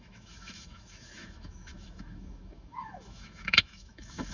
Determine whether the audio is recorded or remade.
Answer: remade